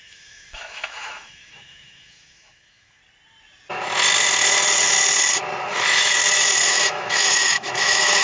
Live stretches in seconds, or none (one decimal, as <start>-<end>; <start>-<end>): 3.0-5.7; 6.2-6.7